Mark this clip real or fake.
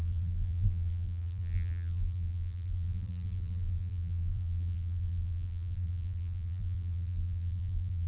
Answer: fake